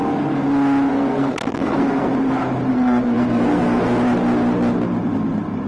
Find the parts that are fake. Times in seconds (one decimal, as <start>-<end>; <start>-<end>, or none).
0.9-2.1; 2.7-3.8